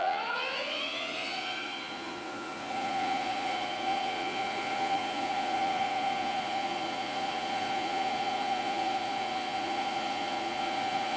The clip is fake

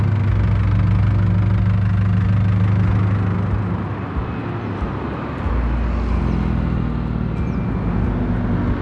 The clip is real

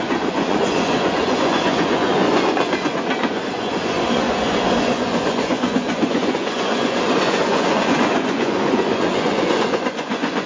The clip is fake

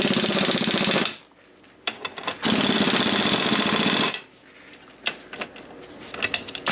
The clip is real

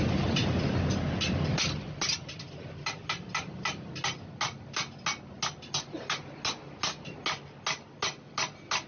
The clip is real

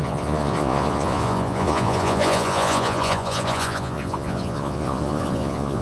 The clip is fake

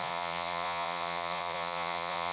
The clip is fake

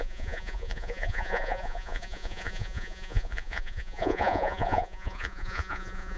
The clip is fake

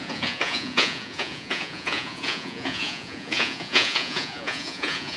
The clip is fake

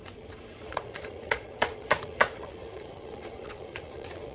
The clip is fake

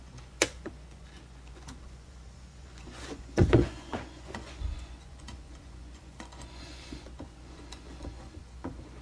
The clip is fake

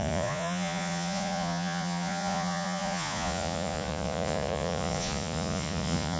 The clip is fake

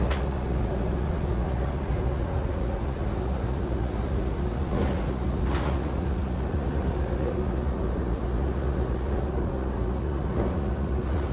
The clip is fake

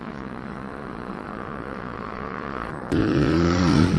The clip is fake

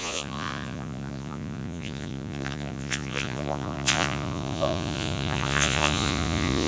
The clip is fake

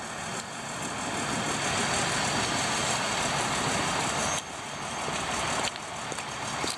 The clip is real